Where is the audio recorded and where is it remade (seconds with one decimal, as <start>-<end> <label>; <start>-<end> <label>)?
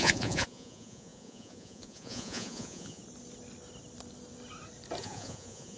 0.0-3.0 remade; 3.0-5.0 recorded; 5.0-5.8 remade